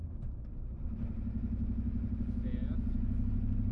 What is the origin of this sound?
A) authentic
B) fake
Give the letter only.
A